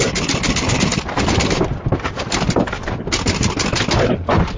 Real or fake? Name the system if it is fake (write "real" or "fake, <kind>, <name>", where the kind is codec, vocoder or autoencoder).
real